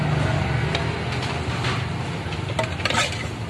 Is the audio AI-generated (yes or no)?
no